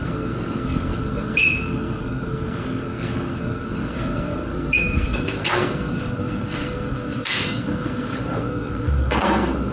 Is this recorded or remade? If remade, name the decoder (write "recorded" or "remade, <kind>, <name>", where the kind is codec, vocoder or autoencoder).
remade, codec, SNAC